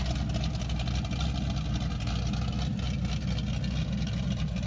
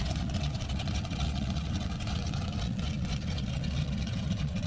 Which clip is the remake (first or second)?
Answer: second